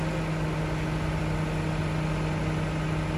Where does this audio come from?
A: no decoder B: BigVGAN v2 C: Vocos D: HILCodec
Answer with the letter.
A